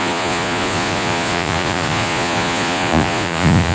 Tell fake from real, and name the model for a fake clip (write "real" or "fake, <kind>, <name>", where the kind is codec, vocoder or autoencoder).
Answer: fake, vocoder, Vocos